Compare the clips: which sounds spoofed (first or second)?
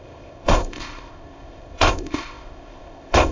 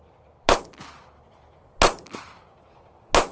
first